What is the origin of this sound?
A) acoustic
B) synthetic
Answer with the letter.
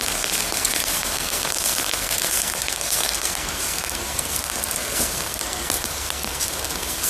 B